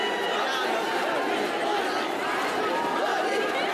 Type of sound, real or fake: real